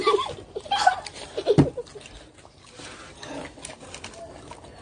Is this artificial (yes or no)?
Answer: no